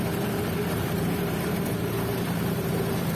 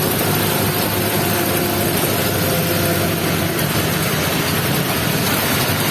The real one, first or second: second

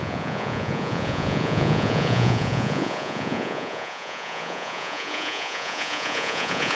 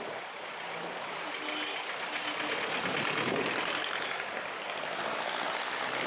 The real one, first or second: second